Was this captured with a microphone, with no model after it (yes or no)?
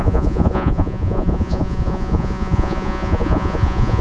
no